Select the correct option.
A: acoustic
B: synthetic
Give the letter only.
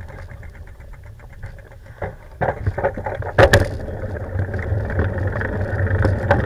A